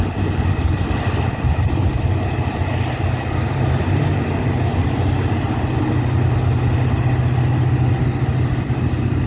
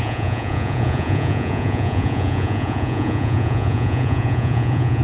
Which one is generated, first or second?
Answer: second